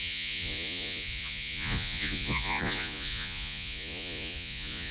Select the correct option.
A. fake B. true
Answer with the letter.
A